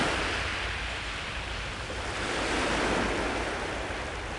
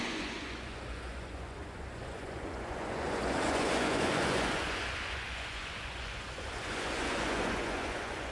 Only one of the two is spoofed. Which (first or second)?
second